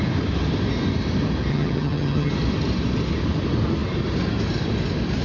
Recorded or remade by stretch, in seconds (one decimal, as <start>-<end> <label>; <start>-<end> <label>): 0.0-1.5 recorded; 1.5-2.3 remade; 2.3-5.2 recorded